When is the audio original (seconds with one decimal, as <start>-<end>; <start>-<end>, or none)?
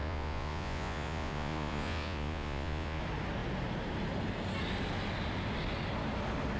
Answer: 3.0-6.6